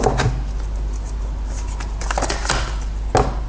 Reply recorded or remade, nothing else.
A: recorded